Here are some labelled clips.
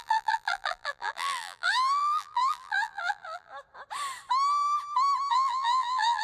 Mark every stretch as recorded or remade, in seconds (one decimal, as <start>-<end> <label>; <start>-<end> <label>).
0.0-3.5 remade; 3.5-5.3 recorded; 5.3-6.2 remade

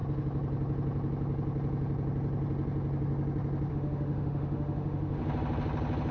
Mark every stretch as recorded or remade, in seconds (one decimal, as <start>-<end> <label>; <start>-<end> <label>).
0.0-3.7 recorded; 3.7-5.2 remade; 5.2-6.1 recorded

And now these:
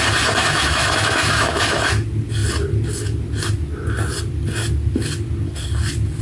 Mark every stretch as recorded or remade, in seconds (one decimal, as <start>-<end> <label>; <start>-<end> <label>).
0.0-0.4 recorded; 0.4-1.8 remade; 1.8-6.2 recorded